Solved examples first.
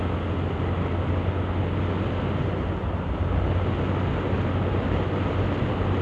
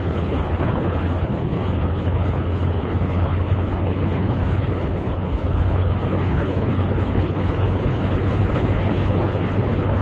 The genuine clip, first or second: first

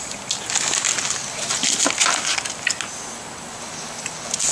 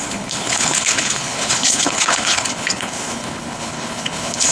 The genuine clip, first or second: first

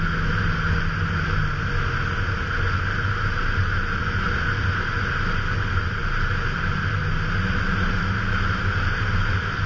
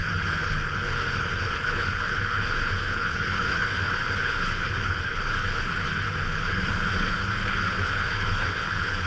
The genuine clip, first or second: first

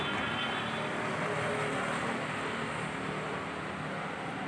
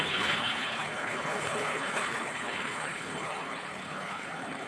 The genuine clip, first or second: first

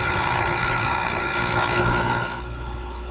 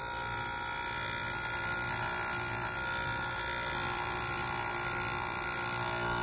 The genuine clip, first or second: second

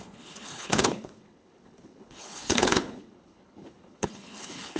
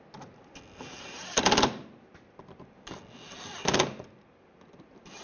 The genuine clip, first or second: second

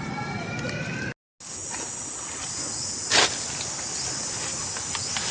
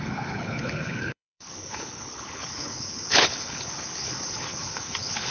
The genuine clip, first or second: first